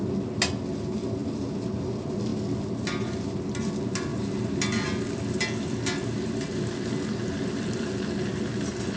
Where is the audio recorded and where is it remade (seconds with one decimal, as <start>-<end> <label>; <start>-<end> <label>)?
0.0-9.0 recorded